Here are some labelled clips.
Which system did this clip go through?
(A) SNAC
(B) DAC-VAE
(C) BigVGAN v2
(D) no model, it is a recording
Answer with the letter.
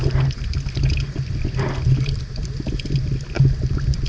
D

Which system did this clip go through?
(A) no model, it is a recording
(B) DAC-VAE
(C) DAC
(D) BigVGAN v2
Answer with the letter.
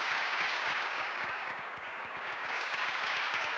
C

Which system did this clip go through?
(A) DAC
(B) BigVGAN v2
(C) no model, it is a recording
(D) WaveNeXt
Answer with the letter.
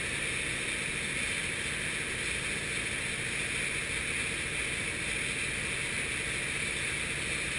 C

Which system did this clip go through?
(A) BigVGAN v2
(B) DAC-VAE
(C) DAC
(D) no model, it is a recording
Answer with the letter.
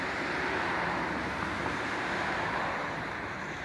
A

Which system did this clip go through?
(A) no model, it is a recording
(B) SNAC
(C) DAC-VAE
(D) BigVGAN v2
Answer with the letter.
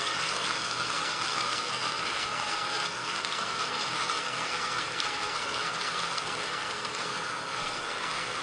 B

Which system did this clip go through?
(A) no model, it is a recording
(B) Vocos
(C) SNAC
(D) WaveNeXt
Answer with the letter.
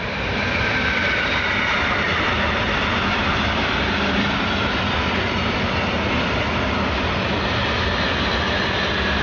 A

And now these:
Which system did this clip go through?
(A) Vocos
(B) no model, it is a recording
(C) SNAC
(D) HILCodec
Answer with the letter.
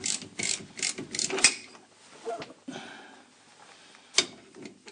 B